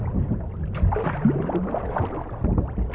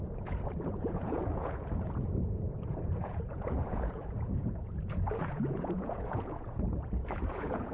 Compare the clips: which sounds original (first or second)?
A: first